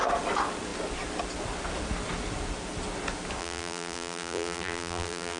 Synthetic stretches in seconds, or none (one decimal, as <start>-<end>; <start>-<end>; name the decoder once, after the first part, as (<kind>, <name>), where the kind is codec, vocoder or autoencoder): 3.4-5.4 (vocoder, BigVGAN v2)